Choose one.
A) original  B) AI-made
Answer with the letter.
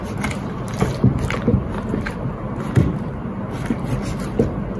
B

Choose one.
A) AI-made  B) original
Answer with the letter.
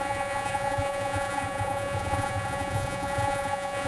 A